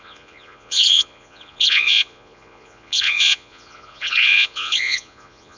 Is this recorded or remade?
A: remade